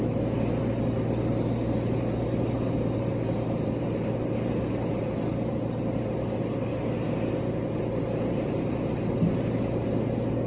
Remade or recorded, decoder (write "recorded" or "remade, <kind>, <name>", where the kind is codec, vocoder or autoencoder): recorded